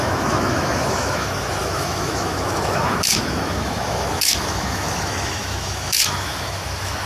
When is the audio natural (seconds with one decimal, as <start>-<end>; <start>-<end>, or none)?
none